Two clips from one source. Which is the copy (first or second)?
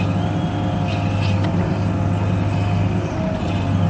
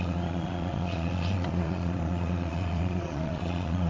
second